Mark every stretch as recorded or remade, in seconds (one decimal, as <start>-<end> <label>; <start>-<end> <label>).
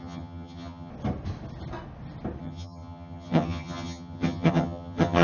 0.0-0.9 remade; 0.9-2.4 recorded; 2.4-5.2 remade